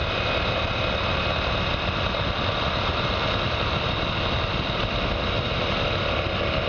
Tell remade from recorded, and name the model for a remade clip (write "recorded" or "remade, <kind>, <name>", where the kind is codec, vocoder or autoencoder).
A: recorded